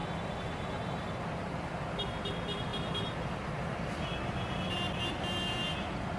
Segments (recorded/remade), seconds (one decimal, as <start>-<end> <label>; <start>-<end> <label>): 0.0-6.2 recorded